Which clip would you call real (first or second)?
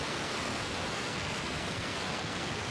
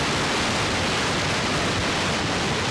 second